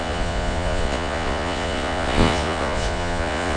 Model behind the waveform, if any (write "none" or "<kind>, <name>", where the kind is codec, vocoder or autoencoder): vocoder, Vocos